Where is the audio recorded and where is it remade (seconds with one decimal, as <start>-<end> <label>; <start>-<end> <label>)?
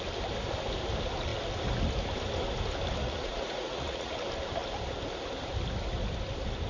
0.0-3.0 recorded; 3.0-4.1 remade; 4.1-6.7 recorded